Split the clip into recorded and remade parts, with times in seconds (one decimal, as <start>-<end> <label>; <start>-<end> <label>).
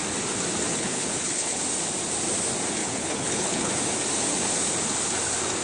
0.0-0.7 recorded; 0.7-1.6 remade; 1.6-2.8 recorded; 2.8-3.7 remade; 3.7-5.6 recorded